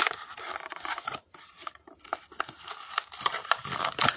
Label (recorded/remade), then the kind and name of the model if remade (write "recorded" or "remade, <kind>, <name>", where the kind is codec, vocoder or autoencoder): remade, vocoder, BigVGAN v2